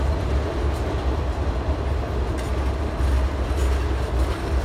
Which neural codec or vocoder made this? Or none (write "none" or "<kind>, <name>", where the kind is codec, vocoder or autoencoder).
none